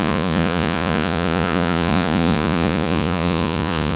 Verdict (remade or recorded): remade